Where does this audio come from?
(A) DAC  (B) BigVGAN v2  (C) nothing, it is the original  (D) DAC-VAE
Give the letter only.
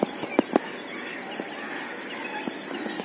C